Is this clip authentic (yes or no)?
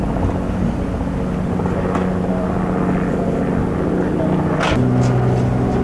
yes